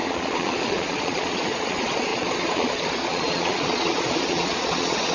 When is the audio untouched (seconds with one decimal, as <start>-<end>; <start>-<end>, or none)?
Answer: none